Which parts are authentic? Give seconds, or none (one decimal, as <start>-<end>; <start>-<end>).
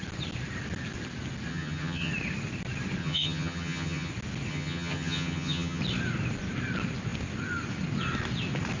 0.0-1.5; 2.1-3.0; 4.1-4.5; 5.8-8.8